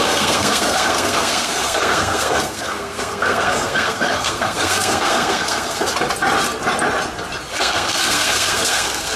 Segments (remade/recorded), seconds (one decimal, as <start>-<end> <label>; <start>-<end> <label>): 0.0-5.9 remade; 5.9-7.5 recorded; 7.5-9.2 remade